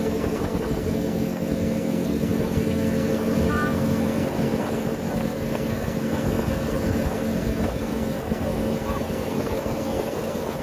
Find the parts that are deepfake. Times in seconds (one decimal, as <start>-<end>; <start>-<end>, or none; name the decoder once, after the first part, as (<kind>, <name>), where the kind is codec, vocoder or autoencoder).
0.0-10.6 (codec, SNAC)